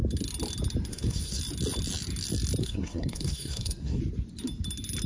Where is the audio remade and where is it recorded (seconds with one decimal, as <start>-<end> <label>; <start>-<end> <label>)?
0.0-0.9 recorded; 0.9-1.4 remade; 1.4-2.6 recorded; 2.6-4.0 remade; 4.0-5.1 recorded